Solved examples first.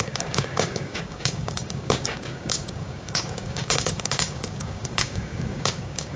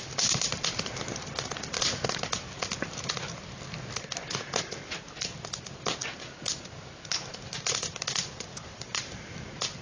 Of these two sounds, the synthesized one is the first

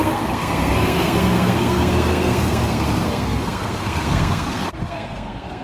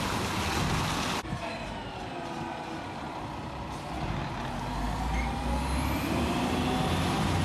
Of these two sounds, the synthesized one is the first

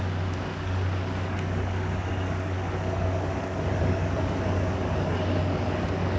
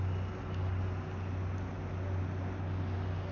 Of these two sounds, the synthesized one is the first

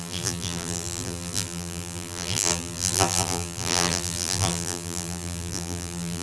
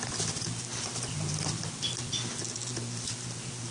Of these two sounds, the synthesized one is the first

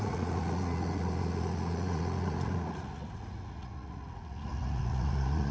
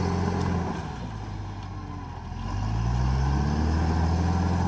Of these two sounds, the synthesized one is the first